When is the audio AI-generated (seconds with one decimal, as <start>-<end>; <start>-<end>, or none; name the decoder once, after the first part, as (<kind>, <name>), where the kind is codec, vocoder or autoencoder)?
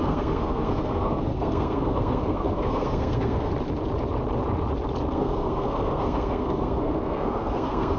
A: 0.0-3.5 (codec, SNAC); 5.1-8.0